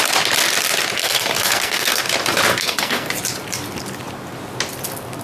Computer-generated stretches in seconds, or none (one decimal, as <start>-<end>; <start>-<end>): 1.0-2.0; 2.5-3.1